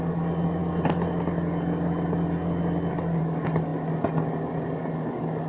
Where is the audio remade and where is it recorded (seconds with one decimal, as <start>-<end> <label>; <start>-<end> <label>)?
0.0-5.5 recorded

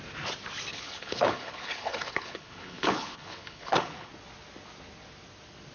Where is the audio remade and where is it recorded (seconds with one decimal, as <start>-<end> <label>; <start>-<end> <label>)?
0.0-0.7 recorded; 0.7-4.1 remade; 4.1-5.7 recorded

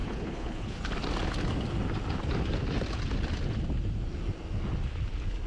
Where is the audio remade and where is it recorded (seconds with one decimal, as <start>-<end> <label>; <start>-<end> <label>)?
0.0-0.8 remade; 0.8-5.5 recorded

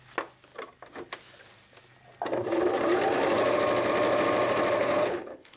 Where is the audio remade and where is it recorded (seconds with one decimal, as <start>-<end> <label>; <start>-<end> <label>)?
0.0-4.8 recorded; 4.8-5.6 remade

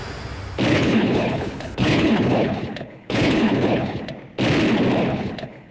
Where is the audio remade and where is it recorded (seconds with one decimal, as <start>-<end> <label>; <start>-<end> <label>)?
0.0-0.7 recorded; 0.7-4.1 remade; 4.1-5.1 recorded; 5.1-5.7 remade